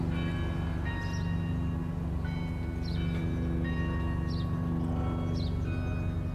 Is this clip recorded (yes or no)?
yes